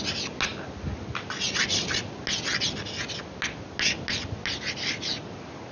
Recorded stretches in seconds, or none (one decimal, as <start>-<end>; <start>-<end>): 0.0-5.7